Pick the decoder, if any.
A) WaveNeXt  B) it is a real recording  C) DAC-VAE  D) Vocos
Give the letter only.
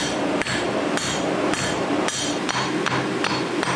B